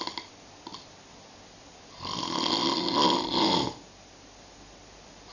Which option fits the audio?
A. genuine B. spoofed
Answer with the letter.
A